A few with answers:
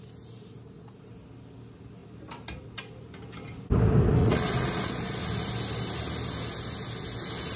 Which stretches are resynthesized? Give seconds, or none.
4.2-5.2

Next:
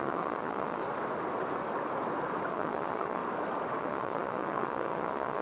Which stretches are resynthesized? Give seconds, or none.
0.0-0.8; 2.5-3.2; 3.8-5.4